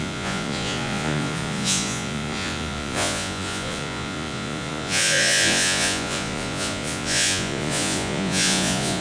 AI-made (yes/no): yes